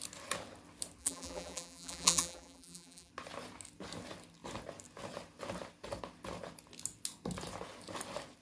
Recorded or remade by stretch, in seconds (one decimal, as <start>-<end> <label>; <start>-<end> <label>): 0.0-1.0 recorded; 1.0-3.1 remade; 3.1-8.4 recorded